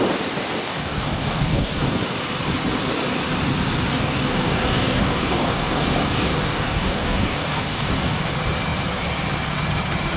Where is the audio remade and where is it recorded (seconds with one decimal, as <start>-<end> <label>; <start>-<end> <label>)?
0.0-0.6 recorded; 0.6-1.9 remade; 1.9-3.9 recorded; 3.9-8.2 remade; 8.2-10.2 recorded